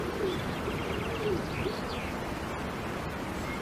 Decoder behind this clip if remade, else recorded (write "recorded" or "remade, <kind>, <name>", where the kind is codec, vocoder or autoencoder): remade, vocoder, BigVGAN v2